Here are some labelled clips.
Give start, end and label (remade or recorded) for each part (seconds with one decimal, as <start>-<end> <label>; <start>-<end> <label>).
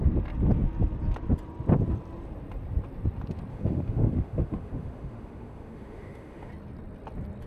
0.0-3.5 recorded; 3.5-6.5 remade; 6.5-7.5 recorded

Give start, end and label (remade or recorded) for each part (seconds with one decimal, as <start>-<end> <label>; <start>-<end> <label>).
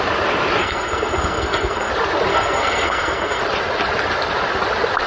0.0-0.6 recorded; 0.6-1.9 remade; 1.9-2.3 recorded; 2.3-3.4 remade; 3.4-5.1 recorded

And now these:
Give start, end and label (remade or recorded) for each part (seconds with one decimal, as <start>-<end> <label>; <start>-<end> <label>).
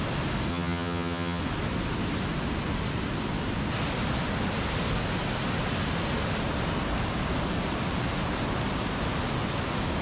0.0-0.5 recorded; 0.5-1.4 remade; 1.4-10.0 recorded